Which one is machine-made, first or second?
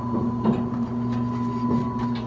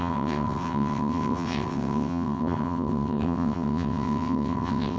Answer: second